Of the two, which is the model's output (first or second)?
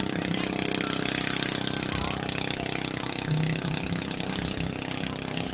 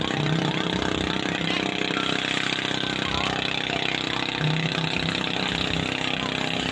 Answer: first